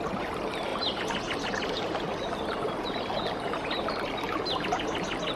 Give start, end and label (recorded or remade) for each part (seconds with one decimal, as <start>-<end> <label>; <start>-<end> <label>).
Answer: 0.0-0.7 recorded; 0.7-3.9 remade; 3.9-5.4 recorded

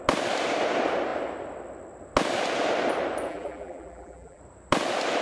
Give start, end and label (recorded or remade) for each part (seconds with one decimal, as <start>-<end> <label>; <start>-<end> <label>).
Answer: 0.0-3.3 recorded; 3.3-4.4 remade; 4.4-5.2 recorded

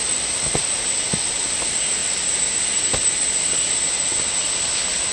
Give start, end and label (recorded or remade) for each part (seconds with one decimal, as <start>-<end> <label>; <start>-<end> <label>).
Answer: 0.0-2.0 recorded; 2.0-4.0 remade; 4.0-5.1 recorded